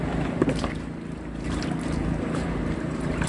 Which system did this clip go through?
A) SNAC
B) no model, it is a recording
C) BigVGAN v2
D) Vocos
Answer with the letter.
C